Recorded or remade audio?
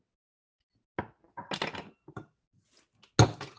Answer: recorded